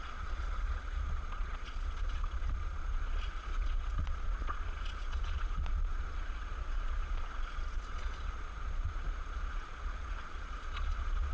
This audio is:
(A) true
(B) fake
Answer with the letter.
B